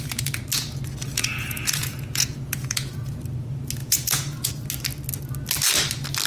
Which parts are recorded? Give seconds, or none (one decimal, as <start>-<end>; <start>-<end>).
0.0-1.1; 3.2-3.8; 4.5-6.3